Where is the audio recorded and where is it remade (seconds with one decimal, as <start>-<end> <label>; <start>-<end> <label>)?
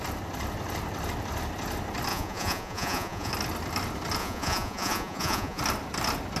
0.0-2.1 recorded; 2.1-3.3 remade; 3.3-4.2 recorded; 4.2-5.6 remade; 5.6-6.4 recorded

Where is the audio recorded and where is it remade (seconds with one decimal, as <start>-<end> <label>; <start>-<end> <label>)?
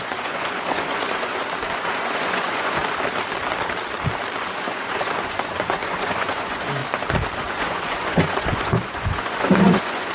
0.0-2.8 remade; 2.8-4.4 recorded; 4.4-6.8 remade; 6.8-7.4 recorded; 7.4-10.1 remade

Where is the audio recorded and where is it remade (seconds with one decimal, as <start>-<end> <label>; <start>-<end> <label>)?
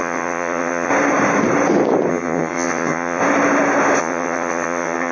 0.0-0.9 remade; 0.9-2.1 recorded; 2.1-3.2 remade; 3.2-4.0 recorded; 4.0-5.1 remade